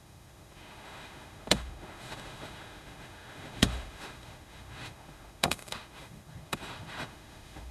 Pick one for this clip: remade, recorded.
remade